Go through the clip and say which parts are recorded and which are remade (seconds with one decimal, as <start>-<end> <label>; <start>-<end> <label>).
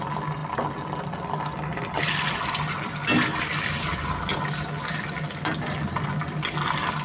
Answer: 0.0-7.0 recorded